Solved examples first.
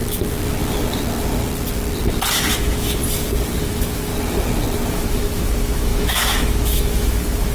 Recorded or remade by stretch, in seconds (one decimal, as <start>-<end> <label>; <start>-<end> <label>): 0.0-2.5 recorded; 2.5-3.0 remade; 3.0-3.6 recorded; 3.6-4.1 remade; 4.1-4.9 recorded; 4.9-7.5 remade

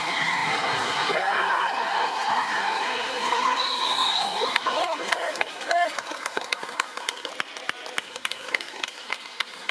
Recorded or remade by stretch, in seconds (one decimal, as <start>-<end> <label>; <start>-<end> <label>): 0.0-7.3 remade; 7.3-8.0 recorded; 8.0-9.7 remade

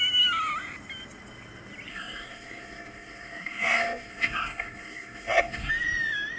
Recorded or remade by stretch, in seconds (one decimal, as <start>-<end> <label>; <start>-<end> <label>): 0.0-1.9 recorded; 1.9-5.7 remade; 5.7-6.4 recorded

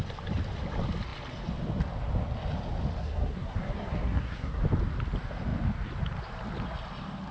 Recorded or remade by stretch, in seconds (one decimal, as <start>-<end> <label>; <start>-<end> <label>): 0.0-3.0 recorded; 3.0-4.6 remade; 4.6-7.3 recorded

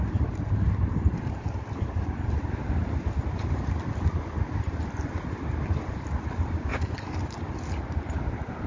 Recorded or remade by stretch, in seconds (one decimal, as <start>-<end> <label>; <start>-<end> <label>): 0.0-8.7 recorded

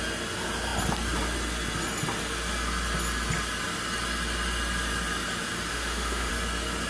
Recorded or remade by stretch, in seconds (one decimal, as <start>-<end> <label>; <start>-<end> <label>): 0.0-5.7 recorded; 5.7-6.3 remade; 6.3-6.9 recorded

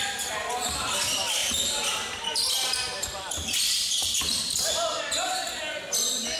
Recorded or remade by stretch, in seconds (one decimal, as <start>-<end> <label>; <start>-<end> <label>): 0.0-1.4 recorded; 1.4-5.0 remade; 5.0-6.4 recorded

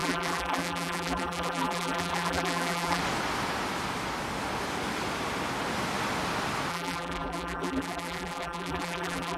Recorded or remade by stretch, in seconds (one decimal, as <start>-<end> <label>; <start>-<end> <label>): 0.0-3.0 remade; 3.0-6.7 recorded; 6.7-9.4 remade